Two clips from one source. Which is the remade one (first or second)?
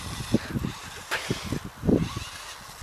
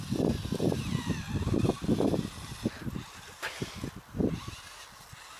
second